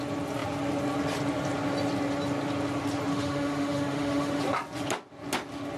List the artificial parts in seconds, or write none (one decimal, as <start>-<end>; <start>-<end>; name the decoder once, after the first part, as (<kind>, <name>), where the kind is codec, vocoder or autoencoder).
3.1-4.4 (autoencoder, DAC-VAE)